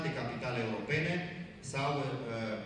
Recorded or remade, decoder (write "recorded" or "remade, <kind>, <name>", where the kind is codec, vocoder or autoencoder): recorded